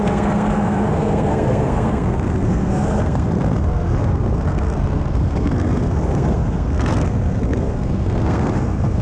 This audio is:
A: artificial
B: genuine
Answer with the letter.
A